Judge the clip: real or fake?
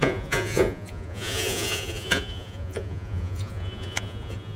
fake